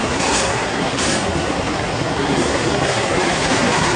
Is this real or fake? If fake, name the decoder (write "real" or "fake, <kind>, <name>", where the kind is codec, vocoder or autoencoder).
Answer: fake, codec, SNAC